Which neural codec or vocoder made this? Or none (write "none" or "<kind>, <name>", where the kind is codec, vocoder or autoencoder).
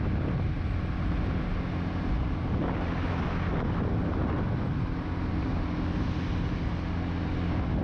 none